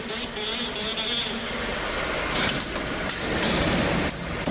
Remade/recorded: recorded